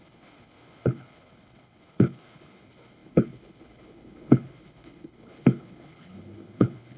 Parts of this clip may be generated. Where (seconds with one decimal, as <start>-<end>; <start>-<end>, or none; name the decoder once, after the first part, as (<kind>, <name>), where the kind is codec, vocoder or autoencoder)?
0.0-7.0 (codec, HILCodec)